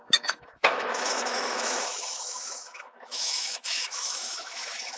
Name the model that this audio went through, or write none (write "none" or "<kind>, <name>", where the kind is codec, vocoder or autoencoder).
autoencoder, DAC-VAE